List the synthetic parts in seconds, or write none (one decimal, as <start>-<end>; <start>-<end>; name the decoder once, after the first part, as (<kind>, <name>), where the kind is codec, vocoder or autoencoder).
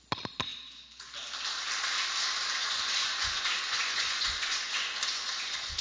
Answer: 2.6-5.8 (vocoder, Vocos)